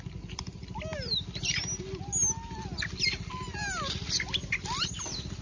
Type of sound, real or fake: real